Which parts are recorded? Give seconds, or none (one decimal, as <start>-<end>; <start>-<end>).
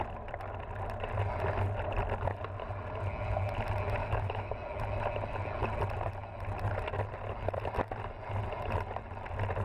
0.0-4.0; 4.5-9.6